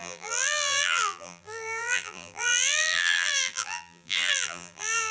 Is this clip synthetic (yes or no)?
yes